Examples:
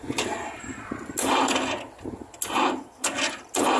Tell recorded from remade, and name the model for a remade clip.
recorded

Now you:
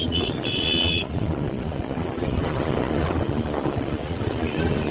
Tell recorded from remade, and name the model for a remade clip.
remade, vocoder, Vocos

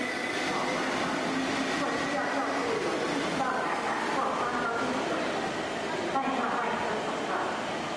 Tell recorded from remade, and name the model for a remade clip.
recorded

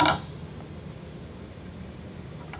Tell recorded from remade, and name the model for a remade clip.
recorded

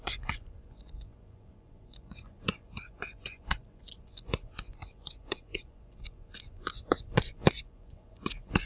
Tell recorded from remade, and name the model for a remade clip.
remade, vocoder, Vocos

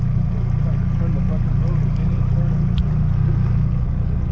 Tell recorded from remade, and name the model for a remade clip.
recorded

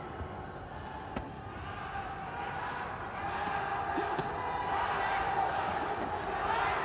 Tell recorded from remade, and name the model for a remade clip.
recorded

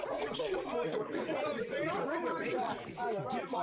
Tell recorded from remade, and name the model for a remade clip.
remade, vocoder, Vocos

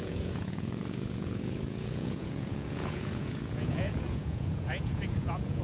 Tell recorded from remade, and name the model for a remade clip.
remade, vocoder, Vocos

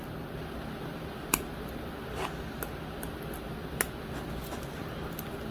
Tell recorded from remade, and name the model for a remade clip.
recorded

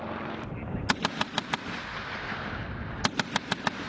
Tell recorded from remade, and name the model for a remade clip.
recorded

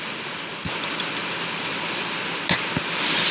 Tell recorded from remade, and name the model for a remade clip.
recorded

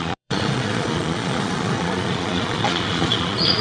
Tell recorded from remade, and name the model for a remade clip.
remade, vocoder, Vocos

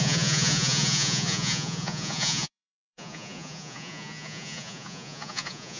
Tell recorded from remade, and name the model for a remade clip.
remade, vocoder, Vocos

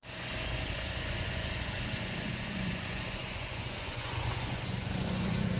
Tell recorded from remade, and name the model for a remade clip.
remade, vocoder, Vocos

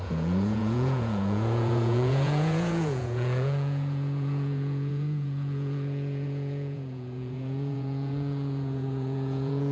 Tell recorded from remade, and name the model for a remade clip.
remade, vocoder, Vocos